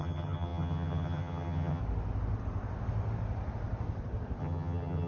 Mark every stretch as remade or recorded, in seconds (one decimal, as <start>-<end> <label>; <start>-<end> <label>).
0.0-1.8 remade; 1.8-4.4 recorded; 4.4-5.1 remade